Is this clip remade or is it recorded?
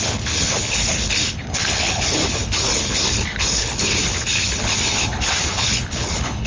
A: remade